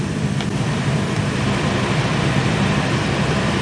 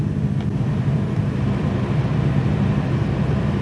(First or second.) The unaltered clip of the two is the second